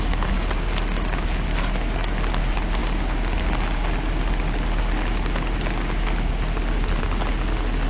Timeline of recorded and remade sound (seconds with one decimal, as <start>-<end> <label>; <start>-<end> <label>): 0.0-7.9 recorded